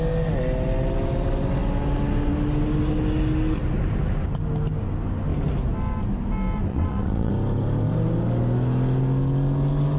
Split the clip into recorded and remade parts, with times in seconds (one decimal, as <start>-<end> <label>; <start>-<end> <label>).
0.0-6.7 recorded; 6.7-7.3 remade; 7.3-10.0 recorded